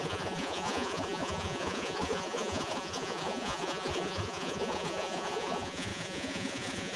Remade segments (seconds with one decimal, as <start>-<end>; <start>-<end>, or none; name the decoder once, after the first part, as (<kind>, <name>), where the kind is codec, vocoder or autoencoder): 0.0-7.0 (vocoder, Vocos)